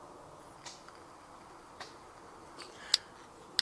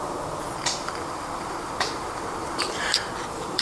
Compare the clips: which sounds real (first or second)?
first